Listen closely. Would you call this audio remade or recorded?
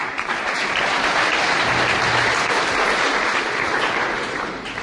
remade